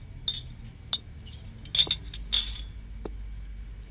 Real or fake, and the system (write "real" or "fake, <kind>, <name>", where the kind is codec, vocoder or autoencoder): real